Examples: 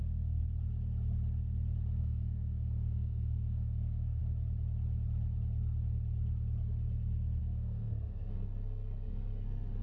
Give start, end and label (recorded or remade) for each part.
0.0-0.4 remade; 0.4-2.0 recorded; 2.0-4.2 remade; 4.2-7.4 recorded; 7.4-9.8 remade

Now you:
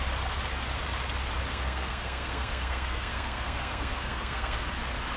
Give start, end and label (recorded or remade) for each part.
0.0-1.5 recorded; 1.5-4.6 remade; 4.6-5.2 recorded

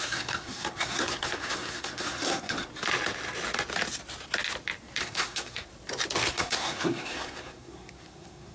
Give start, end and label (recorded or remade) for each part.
0.0-2.7 remade; 2.7-5.0 recorded; 5.0-5.7 remade; 5.7-6.3 recorded; 6.3-8.5 remade

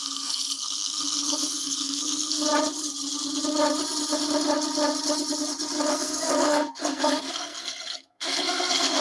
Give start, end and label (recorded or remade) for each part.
0.0-2.5 remade; 2.5-5.9 recorded; 5.9-9.0 remade